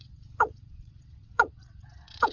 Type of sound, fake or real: fake